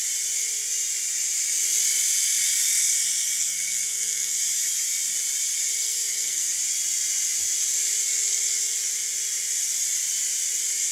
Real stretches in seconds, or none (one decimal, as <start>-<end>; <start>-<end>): 0.0-3.4; 4.4-5.8; 6.5-10.9

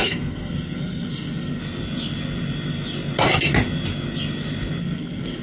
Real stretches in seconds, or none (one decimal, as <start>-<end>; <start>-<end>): 1.6-4.8

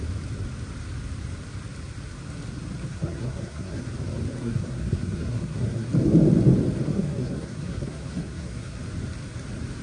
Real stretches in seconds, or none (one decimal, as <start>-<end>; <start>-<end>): 0.0-2.9; 3.8-4.4; 5.9-6.9; 8.8-9.8